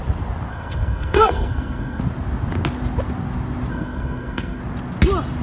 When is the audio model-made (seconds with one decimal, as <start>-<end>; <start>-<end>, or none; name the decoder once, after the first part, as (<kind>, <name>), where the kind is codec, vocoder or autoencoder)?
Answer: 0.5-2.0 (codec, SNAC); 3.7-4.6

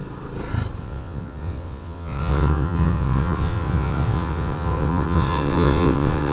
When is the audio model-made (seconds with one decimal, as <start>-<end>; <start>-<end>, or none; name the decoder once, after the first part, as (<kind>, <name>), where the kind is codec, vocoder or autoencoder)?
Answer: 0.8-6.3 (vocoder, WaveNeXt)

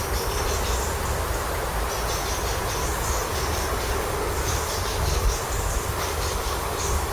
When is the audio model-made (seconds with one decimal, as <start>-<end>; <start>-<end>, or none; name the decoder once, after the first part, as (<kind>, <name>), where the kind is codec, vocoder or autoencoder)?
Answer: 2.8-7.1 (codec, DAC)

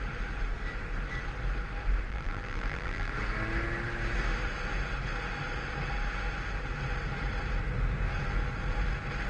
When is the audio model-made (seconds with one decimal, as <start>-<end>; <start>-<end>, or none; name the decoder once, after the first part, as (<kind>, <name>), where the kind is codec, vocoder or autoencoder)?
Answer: 2.1-3.1 (vocoder, BigVGAN v2)